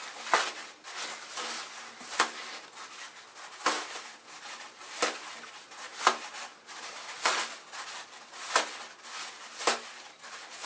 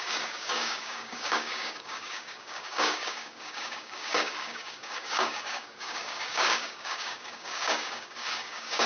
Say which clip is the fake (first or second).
second